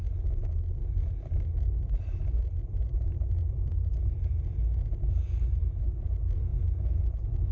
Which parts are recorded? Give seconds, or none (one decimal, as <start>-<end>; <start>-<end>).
0.0-7.5